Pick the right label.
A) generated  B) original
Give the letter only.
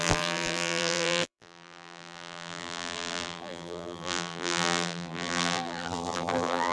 A